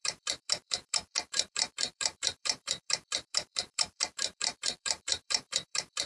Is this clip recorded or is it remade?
remade